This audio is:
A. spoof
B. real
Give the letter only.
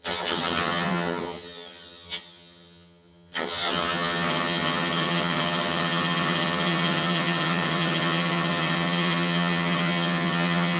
A